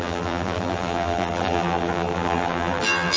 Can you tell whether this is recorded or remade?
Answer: remade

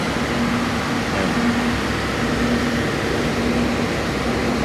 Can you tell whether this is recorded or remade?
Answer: recorded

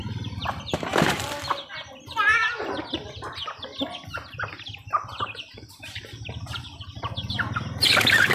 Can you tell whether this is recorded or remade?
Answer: remade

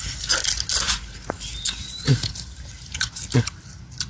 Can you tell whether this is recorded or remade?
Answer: recorded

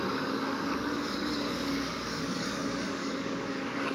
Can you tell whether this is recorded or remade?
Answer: remade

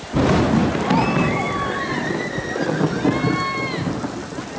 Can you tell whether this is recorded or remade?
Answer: recorded